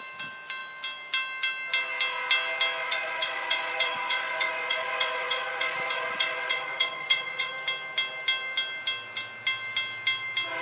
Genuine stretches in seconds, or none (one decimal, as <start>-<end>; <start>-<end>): 0.0-2.8; 7.5-10.6